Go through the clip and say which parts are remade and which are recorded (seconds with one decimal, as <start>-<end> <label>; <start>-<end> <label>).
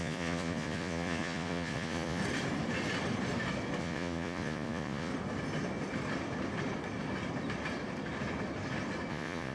0.0-2.2 remade; 2.2-3.8 recorded; 3.8-5.1 remade; 5.1-9.1 recorded; 9.1-9.5 remade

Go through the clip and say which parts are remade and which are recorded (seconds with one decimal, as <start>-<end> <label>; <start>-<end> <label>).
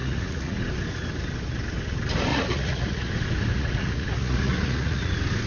0.0-0.6 remade; 0.6-2.3 recorded; 2.3-3.1 remade; 3.1-3.5 recorded; 3.5-5.1 remade; 5.1-5.5 recorded